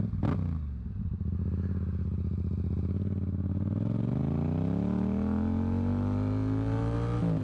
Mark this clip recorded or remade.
recorded